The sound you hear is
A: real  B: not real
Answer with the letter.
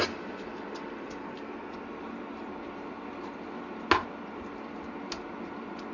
A